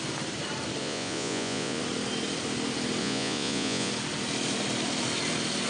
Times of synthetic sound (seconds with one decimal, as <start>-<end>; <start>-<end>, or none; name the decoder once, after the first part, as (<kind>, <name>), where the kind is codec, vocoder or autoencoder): 0.8-1.8 (vocoder, Vocos); 3.0-3.9